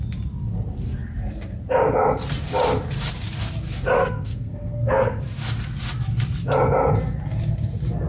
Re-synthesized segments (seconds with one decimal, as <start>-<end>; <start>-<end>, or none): 4.0-5.2